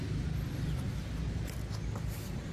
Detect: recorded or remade recorded